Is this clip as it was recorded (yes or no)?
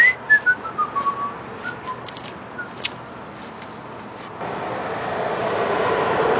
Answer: yes